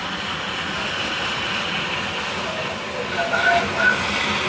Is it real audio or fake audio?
real